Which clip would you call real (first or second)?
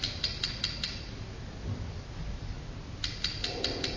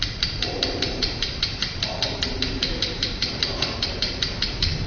first